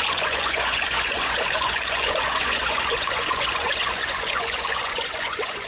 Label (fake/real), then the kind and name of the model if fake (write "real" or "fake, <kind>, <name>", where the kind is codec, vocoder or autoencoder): fake, vocoder, Vocos